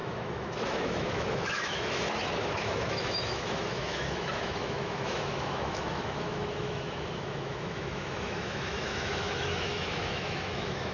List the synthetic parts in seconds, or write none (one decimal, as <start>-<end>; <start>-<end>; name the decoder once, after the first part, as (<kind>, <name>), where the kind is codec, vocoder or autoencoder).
0.0-10.9 (autoencoder, DAC-VAE)